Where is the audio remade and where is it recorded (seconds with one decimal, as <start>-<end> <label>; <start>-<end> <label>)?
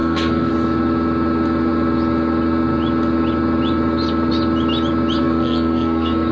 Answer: 0.0-0.5 remade; 0.5-5.2 recorded; 5.2-6.3 remade